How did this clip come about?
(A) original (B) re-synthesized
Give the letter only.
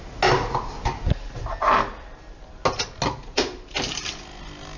A